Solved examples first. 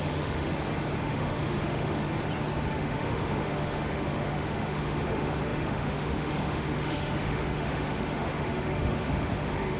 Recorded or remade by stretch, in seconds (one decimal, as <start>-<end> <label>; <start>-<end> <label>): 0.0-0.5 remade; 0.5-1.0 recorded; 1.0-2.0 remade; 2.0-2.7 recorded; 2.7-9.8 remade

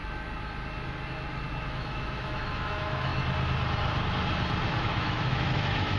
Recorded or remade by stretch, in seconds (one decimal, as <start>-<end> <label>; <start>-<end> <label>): 0.0-1.6 recorded; 1.6-3.1 remade; 3.1-4.8 recorded; 4.8-6.0 remade

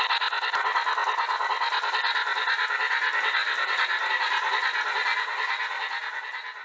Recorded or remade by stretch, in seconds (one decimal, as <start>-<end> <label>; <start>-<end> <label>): 0.0-6.6 recorded

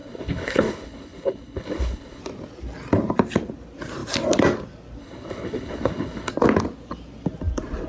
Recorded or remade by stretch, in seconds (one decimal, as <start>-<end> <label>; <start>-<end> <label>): 0.0-2.2 remade; 2.2-5.0 recorded; 5.0-6.3 remade; 6.3-7.9 recorded

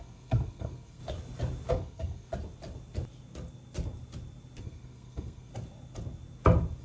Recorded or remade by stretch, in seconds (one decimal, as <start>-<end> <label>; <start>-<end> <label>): 0.0-1.0 remade; 1.0-1.7 recorded; 1.7-2.3 remade; 2.3-4.6 recorded; 4.6-5.5 remade; 5.5-6.8 recorded

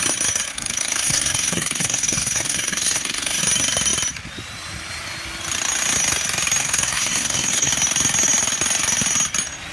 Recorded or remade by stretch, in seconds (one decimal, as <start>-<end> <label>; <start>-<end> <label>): 0.0-0.5 recorded; 0.5-3.4 remade; 3.4-6.6 recorded; 6.6-7.7 remade; 7.7-9.7 recorded